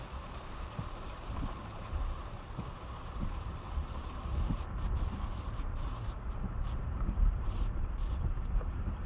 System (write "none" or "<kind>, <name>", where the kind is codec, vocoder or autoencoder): vocoder, BigVGAN v2